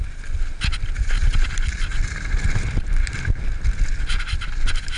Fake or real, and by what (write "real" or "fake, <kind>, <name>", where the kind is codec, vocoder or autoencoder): real